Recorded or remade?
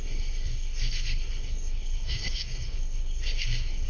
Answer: remade